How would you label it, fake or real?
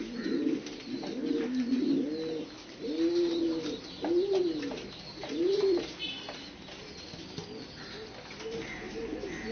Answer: real